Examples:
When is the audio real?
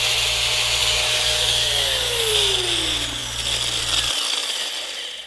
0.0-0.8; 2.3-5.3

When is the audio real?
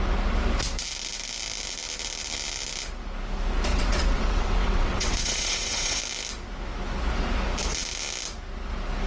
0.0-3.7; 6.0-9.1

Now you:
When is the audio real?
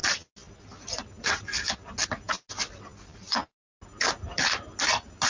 0.0-5.3